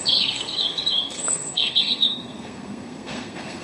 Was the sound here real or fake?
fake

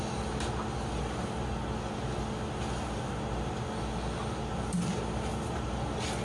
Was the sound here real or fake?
real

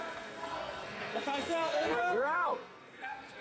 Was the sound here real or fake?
fake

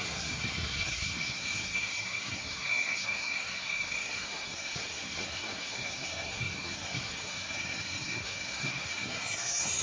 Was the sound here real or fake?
fake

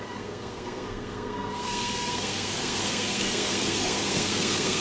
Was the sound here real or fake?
fake